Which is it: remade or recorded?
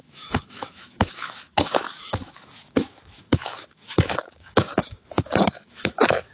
remade